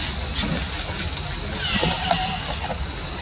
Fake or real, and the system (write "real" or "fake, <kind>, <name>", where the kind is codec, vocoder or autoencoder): real